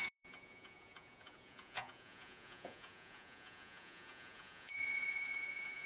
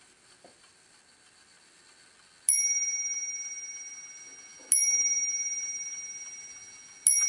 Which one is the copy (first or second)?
first